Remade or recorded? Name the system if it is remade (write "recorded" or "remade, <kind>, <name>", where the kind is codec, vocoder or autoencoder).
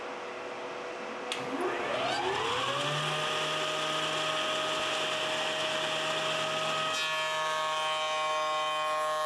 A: recorded